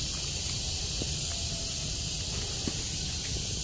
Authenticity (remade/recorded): recorded